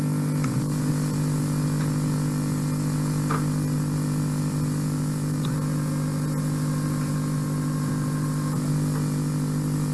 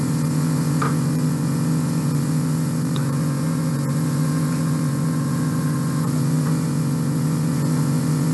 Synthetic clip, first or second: second